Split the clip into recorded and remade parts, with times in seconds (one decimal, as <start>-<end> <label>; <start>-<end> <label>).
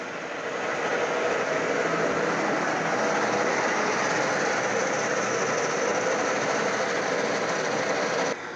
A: 0.0-8.6 recorded